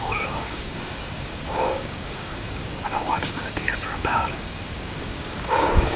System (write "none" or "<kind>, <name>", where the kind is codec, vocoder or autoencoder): codec, DAC